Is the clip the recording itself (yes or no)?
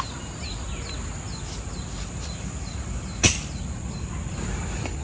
yes